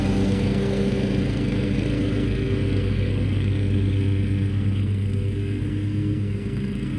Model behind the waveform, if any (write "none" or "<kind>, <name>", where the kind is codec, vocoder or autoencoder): codec, SNAC